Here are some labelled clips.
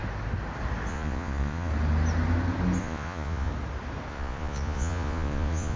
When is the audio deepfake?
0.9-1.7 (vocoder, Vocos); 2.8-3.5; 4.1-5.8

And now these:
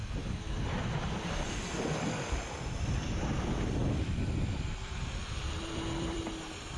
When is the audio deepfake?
0.0-3.3 (vocoder, BigVGAN v2); 3.8-6.2

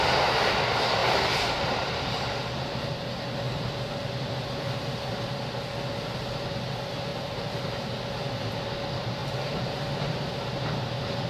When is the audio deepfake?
1.0-2.2 (vocoder, BigVGAN v2); 7.1-7.9; 9.2-10.0